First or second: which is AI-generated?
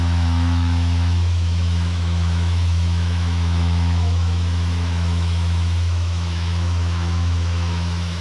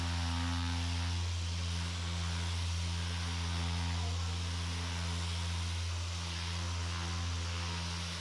first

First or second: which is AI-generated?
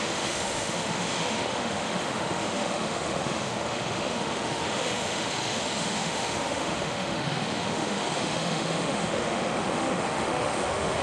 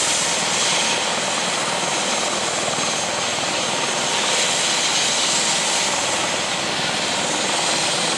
first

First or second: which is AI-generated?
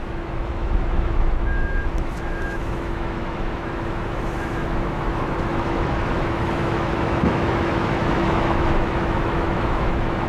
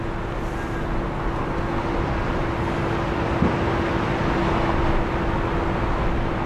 first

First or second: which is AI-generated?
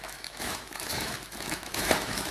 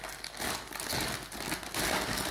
first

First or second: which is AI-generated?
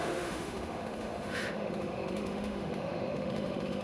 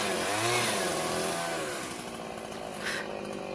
first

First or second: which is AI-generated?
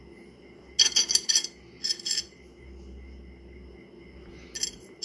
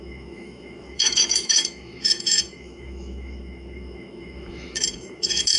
second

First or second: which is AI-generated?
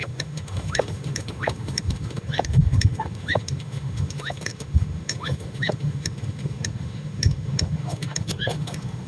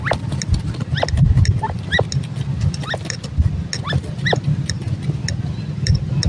first